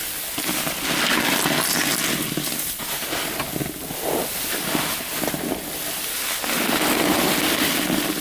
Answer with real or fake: real